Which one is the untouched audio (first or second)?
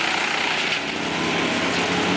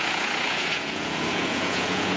first